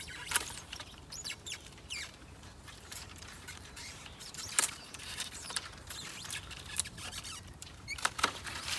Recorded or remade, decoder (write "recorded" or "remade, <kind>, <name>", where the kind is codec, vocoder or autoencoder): remade, vocoder, BigVGAN v2